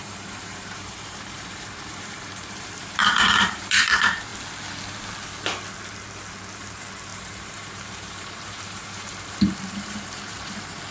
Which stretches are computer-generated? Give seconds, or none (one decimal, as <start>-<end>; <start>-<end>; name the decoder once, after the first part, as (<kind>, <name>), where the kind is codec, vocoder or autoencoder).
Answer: 0.0-4.3 (vocoder, BigVGAN v2); 6.6-10.9